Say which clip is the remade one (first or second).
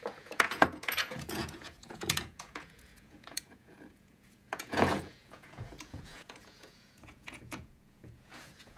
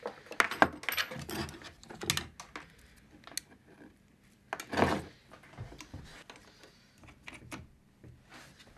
first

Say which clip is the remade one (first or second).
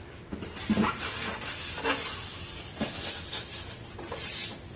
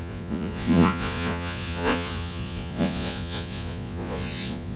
second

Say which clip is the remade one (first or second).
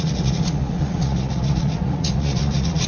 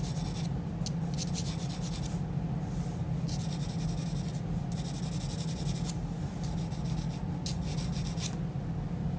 first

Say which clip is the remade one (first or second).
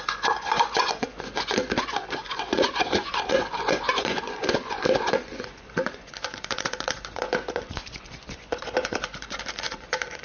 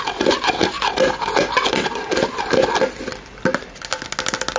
first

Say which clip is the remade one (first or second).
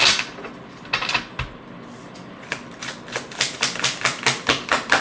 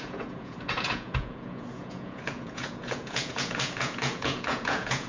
second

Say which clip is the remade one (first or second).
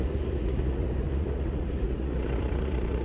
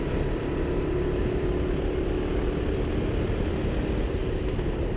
first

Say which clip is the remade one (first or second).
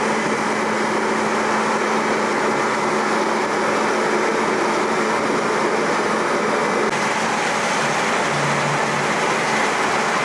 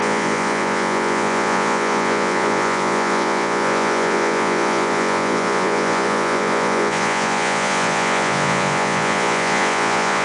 second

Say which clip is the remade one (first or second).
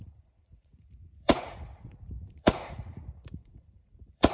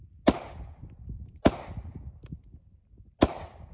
first